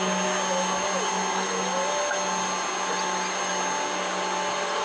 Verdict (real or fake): real